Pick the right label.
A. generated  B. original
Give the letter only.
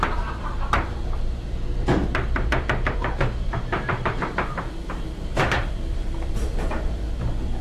A